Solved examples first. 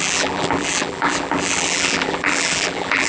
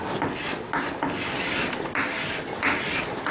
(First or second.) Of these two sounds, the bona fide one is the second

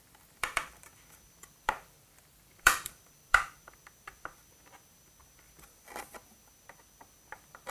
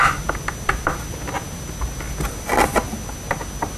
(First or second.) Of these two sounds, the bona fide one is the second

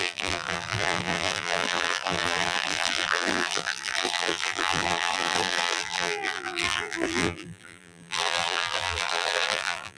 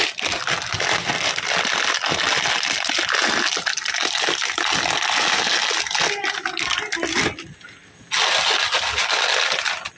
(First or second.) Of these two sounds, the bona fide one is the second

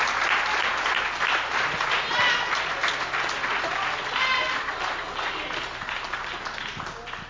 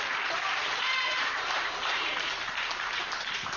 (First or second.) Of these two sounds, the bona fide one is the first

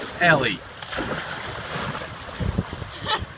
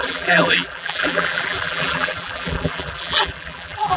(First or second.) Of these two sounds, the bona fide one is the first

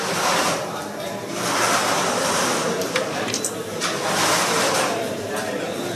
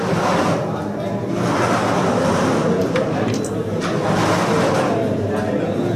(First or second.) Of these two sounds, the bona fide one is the second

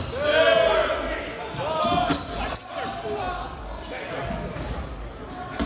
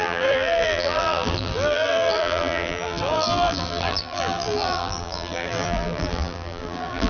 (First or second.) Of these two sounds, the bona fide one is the first